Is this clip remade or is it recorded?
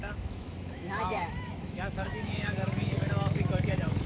remade